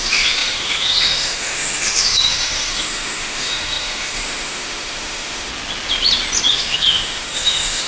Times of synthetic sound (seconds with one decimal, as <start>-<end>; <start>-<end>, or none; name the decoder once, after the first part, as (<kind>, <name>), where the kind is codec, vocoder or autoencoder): 0.0-5.5 (autoencoder, DAC-VAE); 6.5-7.9